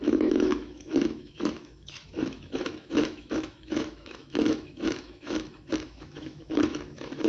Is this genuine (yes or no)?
no